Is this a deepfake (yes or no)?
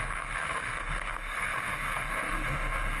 yes